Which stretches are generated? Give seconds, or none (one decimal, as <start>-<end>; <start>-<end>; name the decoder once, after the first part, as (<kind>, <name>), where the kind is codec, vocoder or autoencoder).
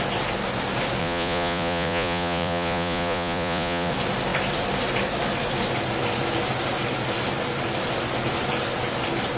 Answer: 1.0-3.9 (vocoder, Vocos)